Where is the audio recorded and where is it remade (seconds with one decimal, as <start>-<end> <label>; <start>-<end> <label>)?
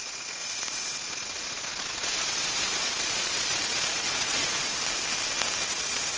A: 0.0-4.7 remade; 4.7-5.7 recorded; 5.7-6.2 remade